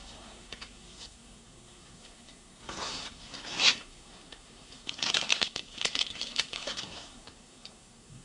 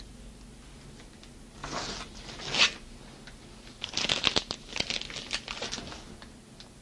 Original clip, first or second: second